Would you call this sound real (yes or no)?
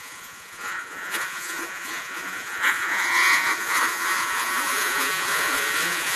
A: no